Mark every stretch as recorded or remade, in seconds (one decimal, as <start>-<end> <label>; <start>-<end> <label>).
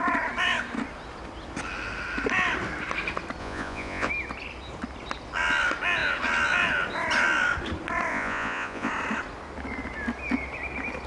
0.0-3.4 recorded; 3.4-4.1 remade; 4.1-8.1 recorded; 8.1-8.9 remade; 8.9-11.1 recorded